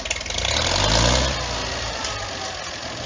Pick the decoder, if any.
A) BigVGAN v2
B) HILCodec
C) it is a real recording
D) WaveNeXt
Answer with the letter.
C